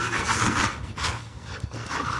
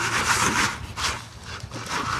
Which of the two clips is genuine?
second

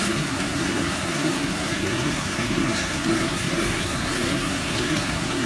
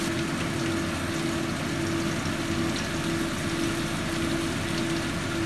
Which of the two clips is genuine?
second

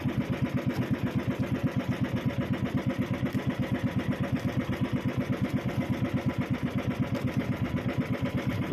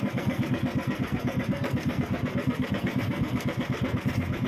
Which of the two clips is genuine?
first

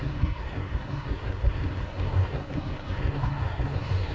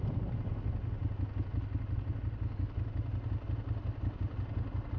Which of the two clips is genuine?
second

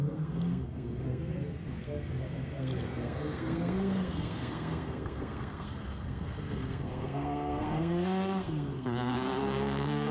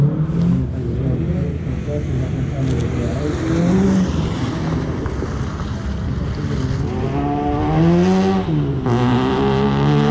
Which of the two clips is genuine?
second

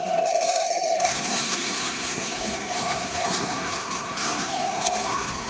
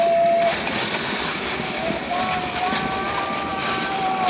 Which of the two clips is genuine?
second